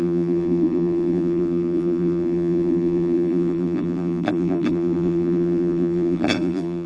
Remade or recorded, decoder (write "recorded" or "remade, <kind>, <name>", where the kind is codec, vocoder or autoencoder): remade, vocoder, BigVGAN v2